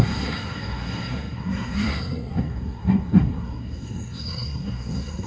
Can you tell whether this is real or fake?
fake